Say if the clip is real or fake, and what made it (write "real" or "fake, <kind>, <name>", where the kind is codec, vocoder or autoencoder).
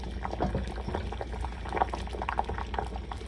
real